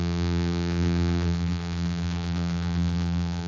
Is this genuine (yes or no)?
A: no